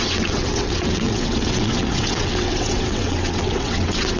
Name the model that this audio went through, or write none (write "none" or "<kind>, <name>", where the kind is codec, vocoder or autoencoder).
vocoder, WaveNeXt